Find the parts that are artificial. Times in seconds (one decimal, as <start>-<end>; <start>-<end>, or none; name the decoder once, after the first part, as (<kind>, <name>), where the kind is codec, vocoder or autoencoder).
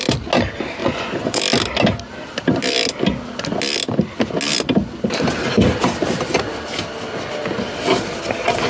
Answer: 0.8-1.4 (vocoder, Vocos)